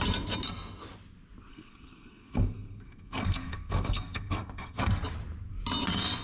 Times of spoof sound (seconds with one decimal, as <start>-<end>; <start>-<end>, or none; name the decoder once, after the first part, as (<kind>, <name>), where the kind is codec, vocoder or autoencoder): 1.5-4.8 (codec, SNAC)